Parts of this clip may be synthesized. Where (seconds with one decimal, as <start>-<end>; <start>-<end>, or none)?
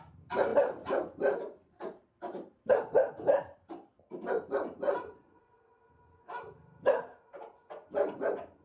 0.5-5.4